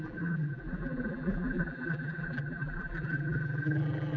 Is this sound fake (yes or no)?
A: yes